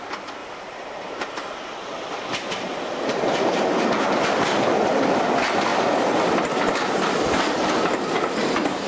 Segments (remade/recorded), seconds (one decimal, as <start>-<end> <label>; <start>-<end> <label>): 0.0-0.4 recorded; 0.4-4.8 remade; 4.8-8.9 recorded